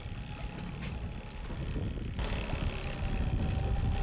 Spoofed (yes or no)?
no